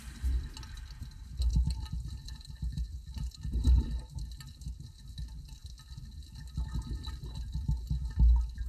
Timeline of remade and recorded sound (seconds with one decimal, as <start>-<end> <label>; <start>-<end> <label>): 0.0-1.5 recorded; 1.5-3.8 remade; 3.8-8.7 recorded